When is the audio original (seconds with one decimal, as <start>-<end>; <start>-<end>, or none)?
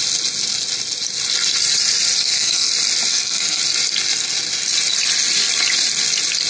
0.0-2.2; 2.7-3.1; 3.6-6.5